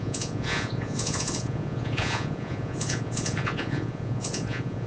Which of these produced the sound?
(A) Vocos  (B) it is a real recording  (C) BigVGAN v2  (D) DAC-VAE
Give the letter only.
A